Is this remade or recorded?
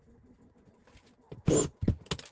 recorded